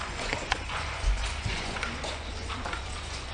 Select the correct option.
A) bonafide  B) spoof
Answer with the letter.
B